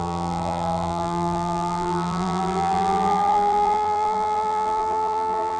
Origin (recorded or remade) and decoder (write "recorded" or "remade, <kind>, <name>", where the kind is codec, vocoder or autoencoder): remade, vocoder, BigVGAN v2